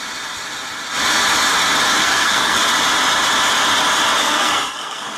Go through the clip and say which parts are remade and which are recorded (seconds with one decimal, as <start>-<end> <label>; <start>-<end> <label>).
0.0-2.0 recorded; 2.0-2.6 remade; 2.6-4.2 recorded; 4.2-5.2 remade